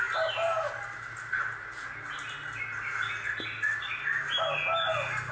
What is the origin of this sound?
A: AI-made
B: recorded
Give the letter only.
B